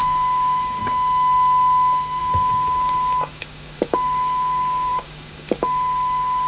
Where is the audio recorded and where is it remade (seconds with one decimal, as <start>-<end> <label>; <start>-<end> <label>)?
0.0-0.8 remade; 0.8-2.2 recorded; 2.2-6.5 remade